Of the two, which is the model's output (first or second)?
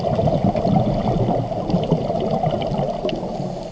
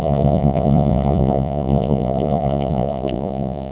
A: second